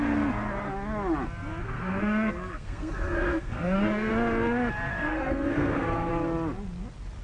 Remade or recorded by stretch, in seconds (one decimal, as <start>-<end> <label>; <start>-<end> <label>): 0.0-1.6 recorded; 1.6-4.1 remade; 4.1-4.9 recorded; 4.9-6.1 remade; 6.1-7.2 recorded